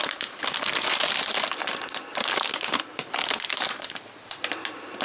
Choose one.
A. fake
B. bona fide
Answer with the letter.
B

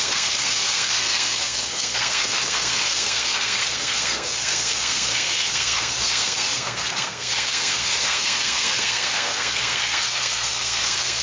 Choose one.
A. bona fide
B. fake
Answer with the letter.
B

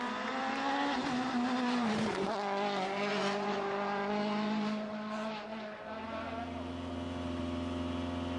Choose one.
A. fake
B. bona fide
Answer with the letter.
B